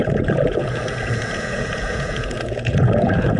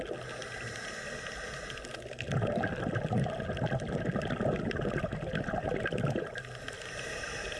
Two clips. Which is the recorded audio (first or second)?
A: second